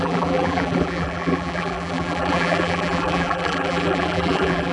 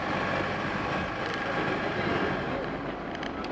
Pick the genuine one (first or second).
second